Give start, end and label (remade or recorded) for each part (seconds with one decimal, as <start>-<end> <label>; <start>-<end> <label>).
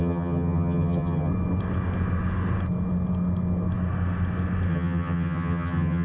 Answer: 0.0-1.3 remade; 1.3-4.7 recorded; 4.7-6.0 remade